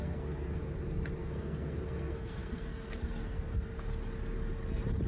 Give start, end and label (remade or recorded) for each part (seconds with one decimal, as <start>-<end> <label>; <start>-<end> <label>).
0.0-0.6 remade; 0.6-1.2 recorded; 1.2-3.7 remade; 3.7-5.1 recorded